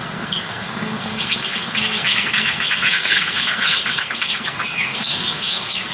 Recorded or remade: remade